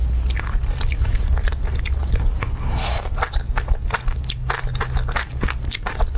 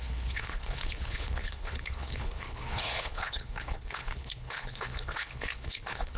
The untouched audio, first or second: first